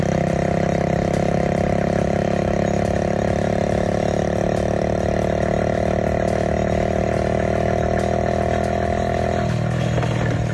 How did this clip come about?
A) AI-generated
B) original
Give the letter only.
B